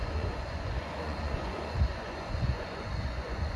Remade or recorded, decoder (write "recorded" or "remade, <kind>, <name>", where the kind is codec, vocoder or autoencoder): remade, vocoder, Vocos